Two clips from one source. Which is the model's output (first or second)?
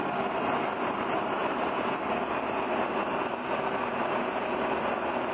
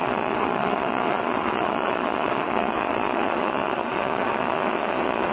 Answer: second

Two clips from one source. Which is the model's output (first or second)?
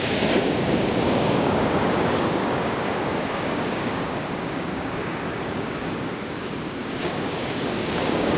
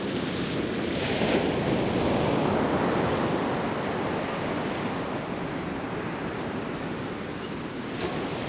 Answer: first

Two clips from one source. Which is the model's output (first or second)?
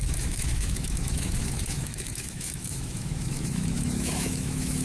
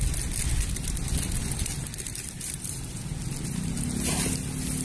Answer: first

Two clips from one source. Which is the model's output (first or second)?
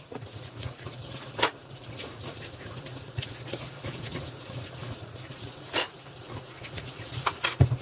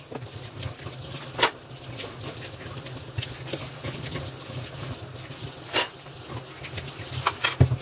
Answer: first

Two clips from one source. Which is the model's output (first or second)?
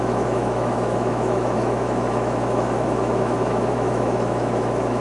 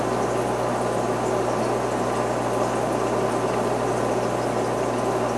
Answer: first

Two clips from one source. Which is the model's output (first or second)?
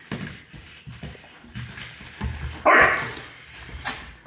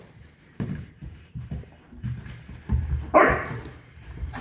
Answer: second